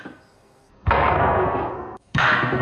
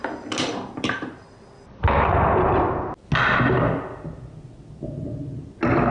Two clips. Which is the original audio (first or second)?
second